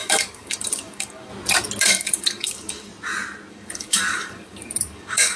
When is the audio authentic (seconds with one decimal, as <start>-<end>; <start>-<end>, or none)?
1.3-1.8; 2.9-3.5